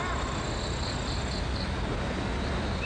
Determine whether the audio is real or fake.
real